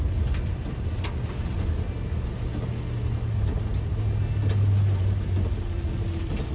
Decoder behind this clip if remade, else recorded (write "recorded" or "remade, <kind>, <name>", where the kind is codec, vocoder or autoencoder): recorded